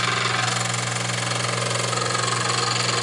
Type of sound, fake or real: real